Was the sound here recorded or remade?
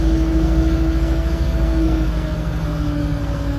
remade